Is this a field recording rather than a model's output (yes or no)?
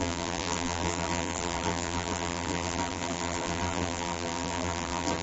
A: no